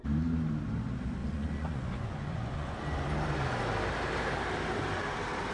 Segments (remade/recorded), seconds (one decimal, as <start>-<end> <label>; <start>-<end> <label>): 0.0-1.2 recorded; 1.2-2.8 remade; 2.8-5.5 recorded